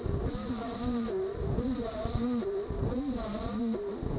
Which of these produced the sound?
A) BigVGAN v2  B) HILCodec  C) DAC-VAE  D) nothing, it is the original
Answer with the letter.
A